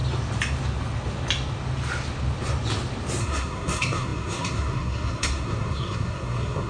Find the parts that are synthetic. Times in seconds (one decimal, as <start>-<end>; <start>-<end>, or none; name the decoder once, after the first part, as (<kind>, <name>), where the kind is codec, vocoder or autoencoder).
3.2-6.7 (codec, SNAC)